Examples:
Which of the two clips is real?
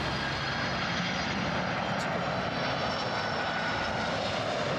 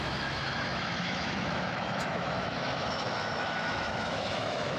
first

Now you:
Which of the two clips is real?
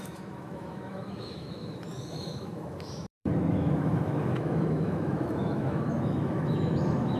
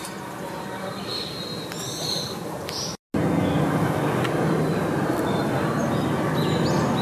second